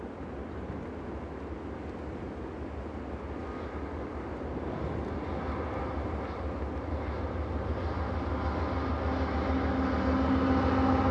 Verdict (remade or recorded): recorded